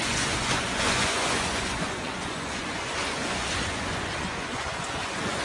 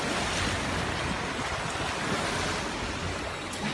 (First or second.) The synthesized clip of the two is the first